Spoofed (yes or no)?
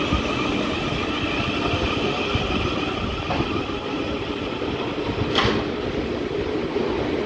no